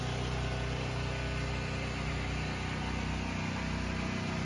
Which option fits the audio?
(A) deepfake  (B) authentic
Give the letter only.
B